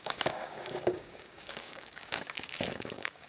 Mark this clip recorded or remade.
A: remade